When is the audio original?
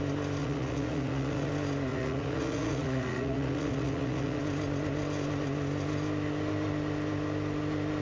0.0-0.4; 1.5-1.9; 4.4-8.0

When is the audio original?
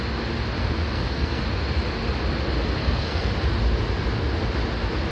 0.0-0.6; 1.4-2.8; 3.3-5.1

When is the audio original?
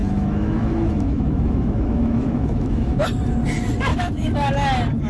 3.0-3.9; 4.5-5.1